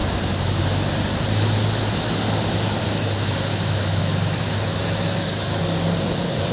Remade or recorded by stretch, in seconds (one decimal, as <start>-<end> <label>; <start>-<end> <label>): 0.0-3.5 recorded; 3.5-5.6 remade; 5.6-6.5 recorded